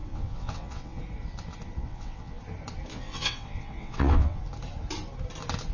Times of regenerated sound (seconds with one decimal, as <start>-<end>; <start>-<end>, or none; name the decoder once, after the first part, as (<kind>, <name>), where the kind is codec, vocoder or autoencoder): 0.0-1.0 (vocoder, WaveNeXt); 1.8-2.4; 2.9-4.4